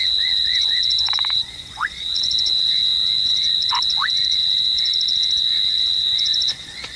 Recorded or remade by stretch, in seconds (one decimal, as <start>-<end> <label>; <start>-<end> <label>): 0.0-7.0 remade